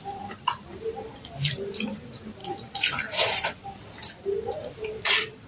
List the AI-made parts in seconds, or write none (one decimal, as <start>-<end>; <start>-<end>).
2.4-3.9; 4.6-5.1